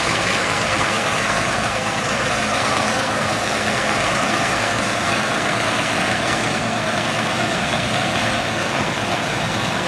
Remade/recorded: remade